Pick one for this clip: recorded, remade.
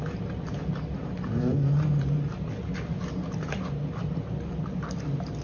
recorded